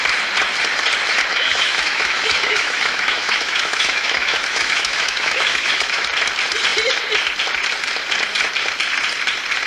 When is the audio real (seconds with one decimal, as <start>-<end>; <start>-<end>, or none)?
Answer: 0.0-1.3; 6.1-9.7